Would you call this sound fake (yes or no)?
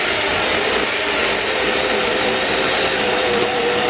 no